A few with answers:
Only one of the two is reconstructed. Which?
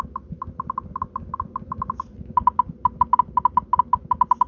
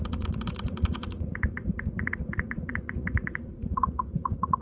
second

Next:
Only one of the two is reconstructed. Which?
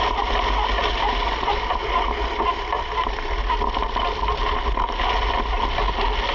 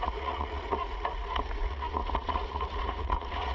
second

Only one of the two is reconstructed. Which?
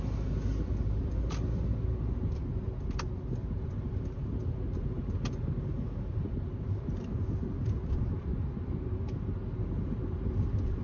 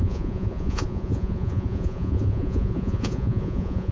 second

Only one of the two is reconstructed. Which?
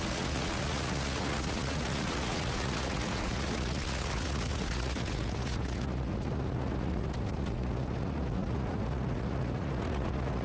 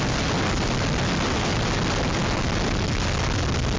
first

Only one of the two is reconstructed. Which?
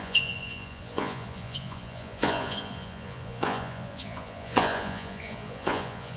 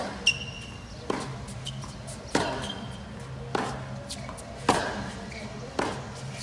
first